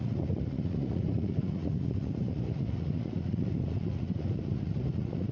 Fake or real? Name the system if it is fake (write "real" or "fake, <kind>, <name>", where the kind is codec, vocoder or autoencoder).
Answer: fake, vocoder, Vocos